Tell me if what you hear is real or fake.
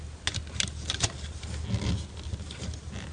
real